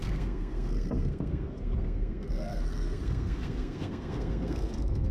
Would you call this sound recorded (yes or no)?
no